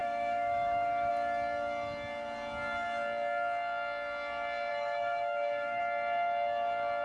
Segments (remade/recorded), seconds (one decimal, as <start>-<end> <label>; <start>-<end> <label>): 0.0-1.1 remade; 1.1-4.7 recorded; 4.7-5.8 remade; 5.8-7.0 recorded